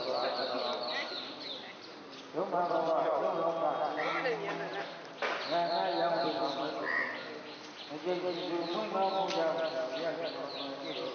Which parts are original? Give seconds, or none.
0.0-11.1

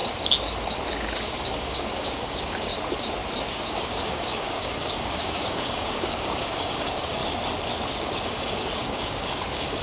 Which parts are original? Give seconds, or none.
0.0-0.9; 2.7-3.4; 7.2-7.9

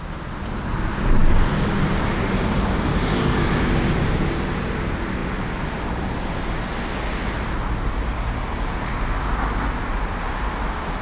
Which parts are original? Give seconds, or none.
0.0-11.0

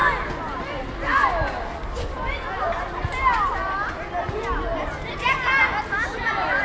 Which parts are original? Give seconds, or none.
0.0-6.6